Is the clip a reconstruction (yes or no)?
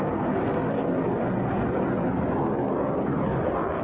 no